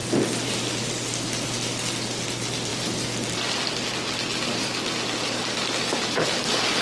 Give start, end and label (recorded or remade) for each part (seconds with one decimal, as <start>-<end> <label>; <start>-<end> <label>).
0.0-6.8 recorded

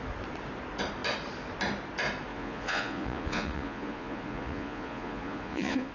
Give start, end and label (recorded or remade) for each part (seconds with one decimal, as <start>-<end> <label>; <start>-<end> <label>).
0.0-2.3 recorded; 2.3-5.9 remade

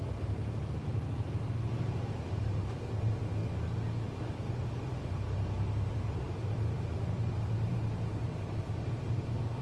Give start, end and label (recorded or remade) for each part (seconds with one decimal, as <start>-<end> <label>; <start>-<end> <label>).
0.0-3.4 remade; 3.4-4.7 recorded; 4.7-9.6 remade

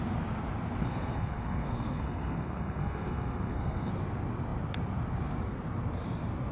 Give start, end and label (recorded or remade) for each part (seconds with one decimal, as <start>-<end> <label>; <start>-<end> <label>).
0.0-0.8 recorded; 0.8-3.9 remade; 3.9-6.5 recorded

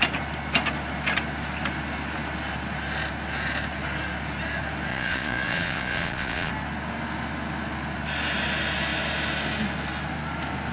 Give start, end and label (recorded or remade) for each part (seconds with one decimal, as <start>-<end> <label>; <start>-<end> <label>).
0.0-4.9 recorded; 4.9-6.5 remade; 6.5-10.7 recorded